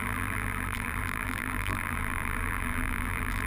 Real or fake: fake